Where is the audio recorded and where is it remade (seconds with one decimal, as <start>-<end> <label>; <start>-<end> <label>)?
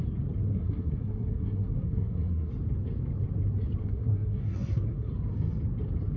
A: 0.0-0.5 recorded; 0.5-2.5 remade; 2.5-3.8 recorded; 3.8-5.1 remade; 5.1-6.2 recorded